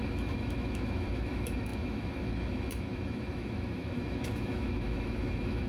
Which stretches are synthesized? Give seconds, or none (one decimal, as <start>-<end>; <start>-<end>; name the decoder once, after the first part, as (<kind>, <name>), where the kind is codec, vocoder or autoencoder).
0.0-5.7 (autoencoder, DAC-VAE)